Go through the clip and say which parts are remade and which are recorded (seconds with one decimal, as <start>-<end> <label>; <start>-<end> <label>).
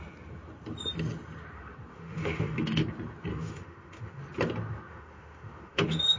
0.0-1.9 recorded; 1.9-2.8 remade; 2.8-3.3 recorded; 3.3-4.2 remade; 4.2-4.9 recorded; 4.9-6.2 remade